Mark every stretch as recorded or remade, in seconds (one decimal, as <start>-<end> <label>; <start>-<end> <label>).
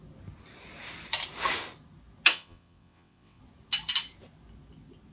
0.0-2.3 recorded; 2.3-3.4 remade; 3.4-5.1 recorded